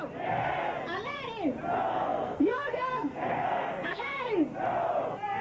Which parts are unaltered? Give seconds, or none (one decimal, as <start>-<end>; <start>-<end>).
0.0-1.9; 4.3-5.4